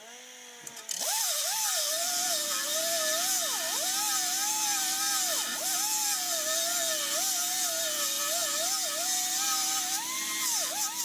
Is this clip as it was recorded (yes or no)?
yes